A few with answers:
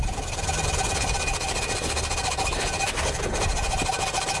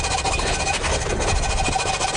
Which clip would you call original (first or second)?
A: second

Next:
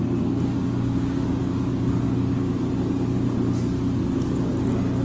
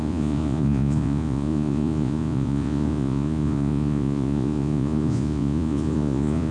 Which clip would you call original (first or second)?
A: first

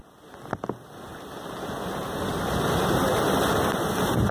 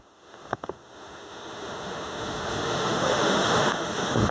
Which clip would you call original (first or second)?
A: first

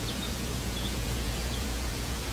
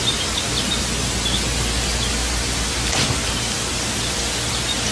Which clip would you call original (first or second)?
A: second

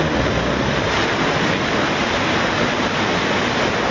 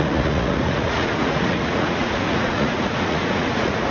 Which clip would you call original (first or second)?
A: first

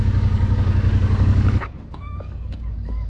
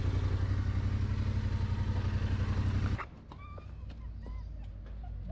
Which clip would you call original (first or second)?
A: second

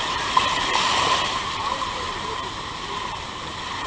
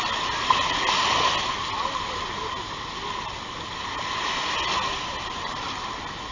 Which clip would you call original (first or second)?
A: second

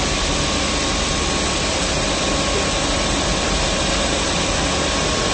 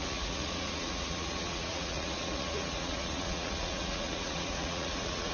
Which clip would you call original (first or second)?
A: first